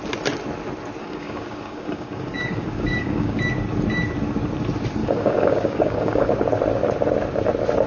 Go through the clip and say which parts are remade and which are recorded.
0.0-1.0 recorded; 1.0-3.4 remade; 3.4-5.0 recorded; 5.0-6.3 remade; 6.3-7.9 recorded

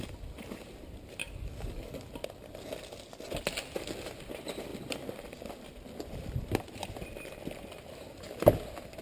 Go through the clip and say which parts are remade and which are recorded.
0.0-1.2 recorded; 1.2-2.1 remade; 2.1-9.0 recorded

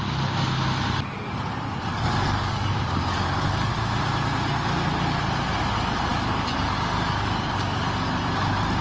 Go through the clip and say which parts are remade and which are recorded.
0.0-1.9 recorded; 1.9-3.7 remade; 3.7-6.1 recorded; 6.1-8.1 remade; 8.1-8.8 recorded